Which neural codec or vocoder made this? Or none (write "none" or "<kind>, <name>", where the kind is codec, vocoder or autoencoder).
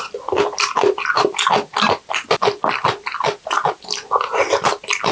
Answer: none